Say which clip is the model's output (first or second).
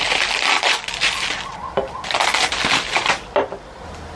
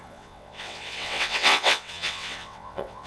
second